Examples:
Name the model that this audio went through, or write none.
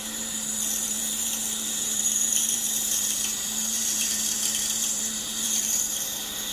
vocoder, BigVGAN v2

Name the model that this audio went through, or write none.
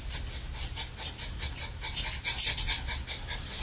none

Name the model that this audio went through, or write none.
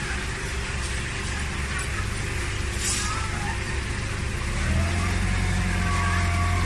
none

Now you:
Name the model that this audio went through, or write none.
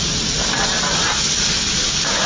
none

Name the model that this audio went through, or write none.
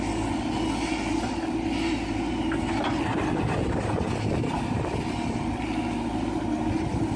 none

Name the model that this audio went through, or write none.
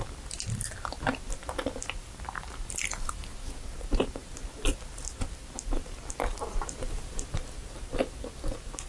none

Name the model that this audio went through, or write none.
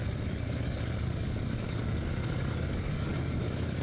codec, DAC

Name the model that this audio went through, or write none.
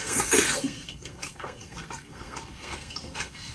codec, SNAC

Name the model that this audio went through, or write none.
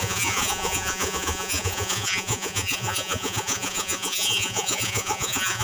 vocoder, Vocos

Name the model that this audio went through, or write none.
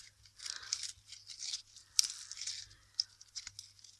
none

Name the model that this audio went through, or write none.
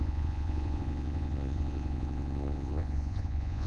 vocoder, Vocos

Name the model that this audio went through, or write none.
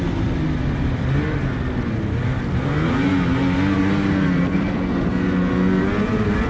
none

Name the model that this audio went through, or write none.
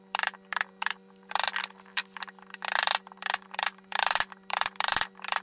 vocoder, BigVGAN v2